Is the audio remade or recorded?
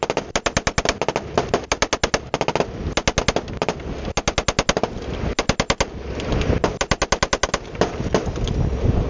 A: recorded